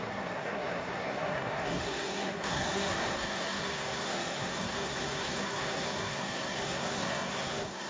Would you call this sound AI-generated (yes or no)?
yes